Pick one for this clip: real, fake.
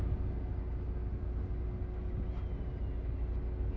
real